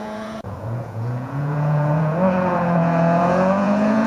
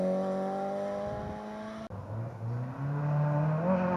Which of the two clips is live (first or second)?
second